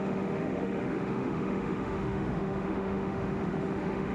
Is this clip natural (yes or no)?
no